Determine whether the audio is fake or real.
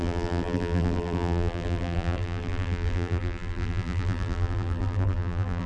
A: fake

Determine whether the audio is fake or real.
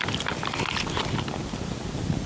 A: real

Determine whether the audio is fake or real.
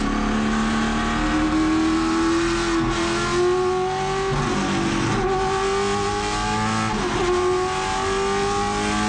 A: real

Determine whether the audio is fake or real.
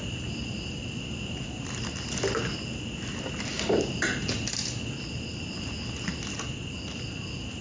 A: real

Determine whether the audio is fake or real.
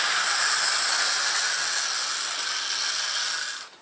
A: real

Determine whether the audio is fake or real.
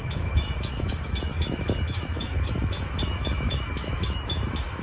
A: fake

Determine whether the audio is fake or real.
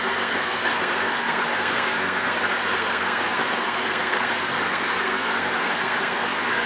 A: fake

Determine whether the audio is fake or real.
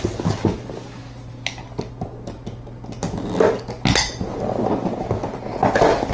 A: real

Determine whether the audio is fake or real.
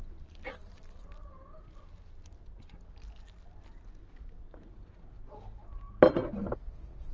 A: real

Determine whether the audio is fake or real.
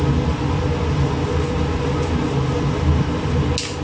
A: real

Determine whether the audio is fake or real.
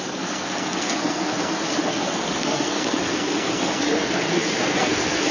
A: fake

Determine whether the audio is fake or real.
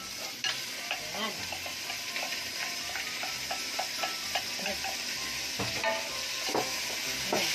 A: real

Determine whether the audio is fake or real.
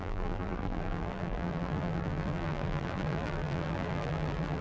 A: fake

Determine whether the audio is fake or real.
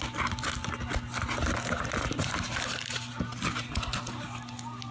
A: real